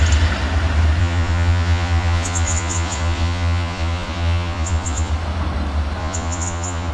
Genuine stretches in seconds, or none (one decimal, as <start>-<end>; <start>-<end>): 0.0-1.0; 5.1-6.0